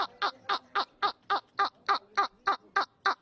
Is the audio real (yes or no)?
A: yes